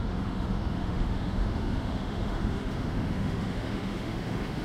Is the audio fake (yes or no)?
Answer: yes